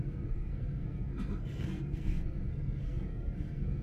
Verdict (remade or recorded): remade